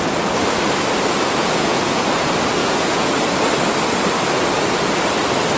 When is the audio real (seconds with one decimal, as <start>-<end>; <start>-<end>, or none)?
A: 0.0-1.4; 2.0-2.6; 3.1-5.6